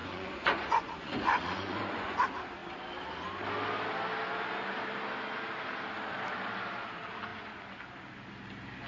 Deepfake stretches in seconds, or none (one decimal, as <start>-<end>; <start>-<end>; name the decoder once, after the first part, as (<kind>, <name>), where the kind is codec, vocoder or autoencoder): 0.0-2.2 (vocoder, Vocos)